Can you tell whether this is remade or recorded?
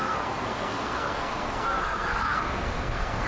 remade